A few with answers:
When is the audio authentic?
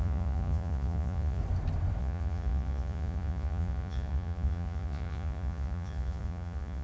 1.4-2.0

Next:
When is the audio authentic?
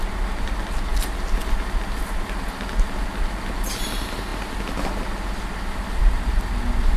0.0-7.0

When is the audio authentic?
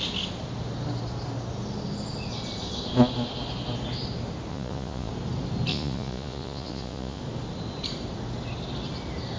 0.0-4.5; 5.1-5.7; 7.2-9.4